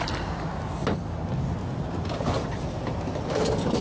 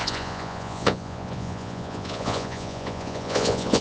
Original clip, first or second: first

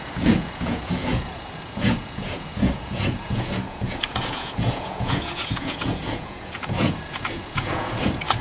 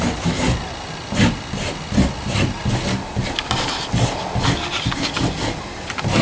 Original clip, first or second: second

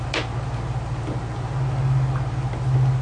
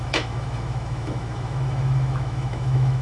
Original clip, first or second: first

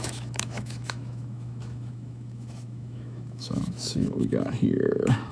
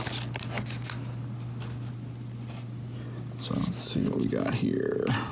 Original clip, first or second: second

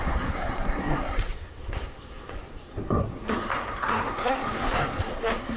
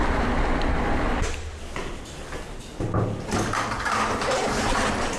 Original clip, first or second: second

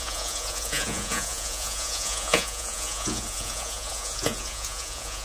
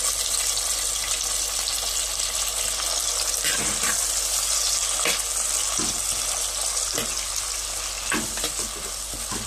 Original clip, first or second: second